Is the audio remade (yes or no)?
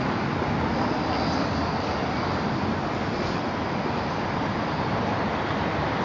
yes